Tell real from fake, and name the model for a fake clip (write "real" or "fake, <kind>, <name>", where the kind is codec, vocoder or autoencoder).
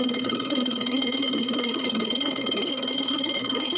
fake, codec, SNAC